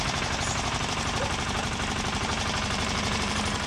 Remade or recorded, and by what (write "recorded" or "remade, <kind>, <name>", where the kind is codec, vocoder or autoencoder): remade, vocoder, BigVGAN v2